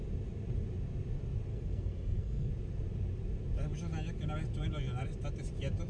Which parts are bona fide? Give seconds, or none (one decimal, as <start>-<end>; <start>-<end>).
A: 0.0-1.5; 2.5-5.9